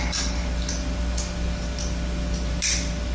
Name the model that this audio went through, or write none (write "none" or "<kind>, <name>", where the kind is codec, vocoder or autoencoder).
none